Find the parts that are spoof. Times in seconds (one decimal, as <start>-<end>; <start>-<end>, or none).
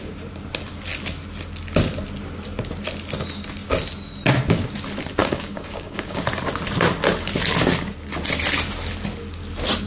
5.2-6.2